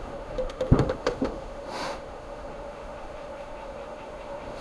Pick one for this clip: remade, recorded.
remade